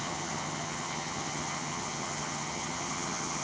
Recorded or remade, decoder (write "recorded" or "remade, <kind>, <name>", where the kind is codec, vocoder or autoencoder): remade, vocoder, HiFi-GAN